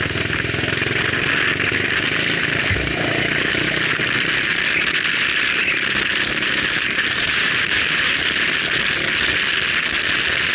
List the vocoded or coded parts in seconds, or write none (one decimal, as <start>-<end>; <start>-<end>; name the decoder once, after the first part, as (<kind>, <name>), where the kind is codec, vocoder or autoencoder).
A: 6.1-8.6 (vocoder, BigVGAN v2)